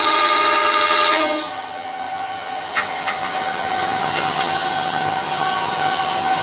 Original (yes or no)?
no